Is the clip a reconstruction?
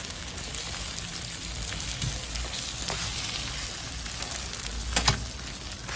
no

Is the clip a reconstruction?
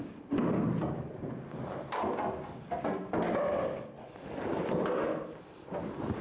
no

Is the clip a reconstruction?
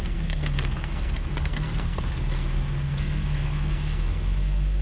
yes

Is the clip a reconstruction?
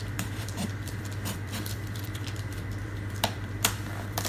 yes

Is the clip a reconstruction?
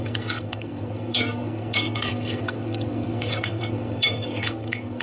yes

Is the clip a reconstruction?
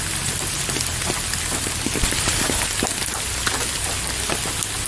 no